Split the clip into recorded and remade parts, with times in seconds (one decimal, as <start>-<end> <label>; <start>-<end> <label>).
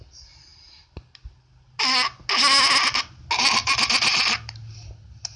0.0-5.4 recorded